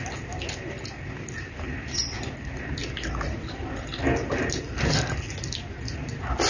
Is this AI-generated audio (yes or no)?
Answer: no